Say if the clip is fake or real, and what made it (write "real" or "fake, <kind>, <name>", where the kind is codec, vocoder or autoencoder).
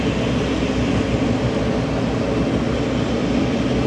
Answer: real